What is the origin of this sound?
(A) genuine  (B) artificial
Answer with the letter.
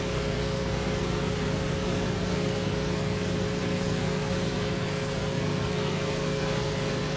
B